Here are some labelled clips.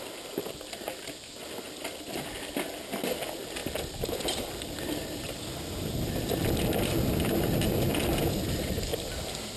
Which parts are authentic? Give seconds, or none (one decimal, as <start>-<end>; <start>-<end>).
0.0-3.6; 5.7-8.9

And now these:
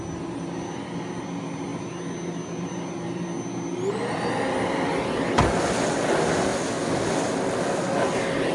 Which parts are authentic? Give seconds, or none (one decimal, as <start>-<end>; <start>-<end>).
0.0-8.5

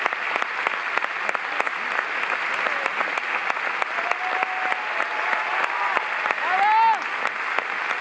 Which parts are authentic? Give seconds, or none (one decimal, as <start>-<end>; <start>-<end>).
0.0-8.0

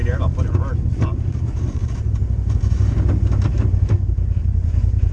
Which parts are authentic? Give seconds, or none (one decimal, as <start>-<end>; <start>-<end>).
0.0-1.3; 1.8-4.4

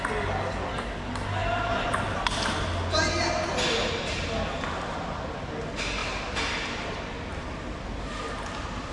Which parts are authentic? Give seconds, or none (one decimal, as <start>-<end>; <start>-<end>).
0.0-1.4; 2.7-6.0; 7.0-8.9